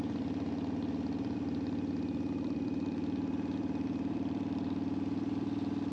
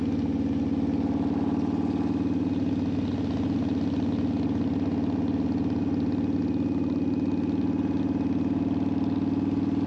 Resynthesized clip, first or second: first